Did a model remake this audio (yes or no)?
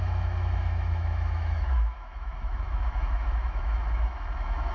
yes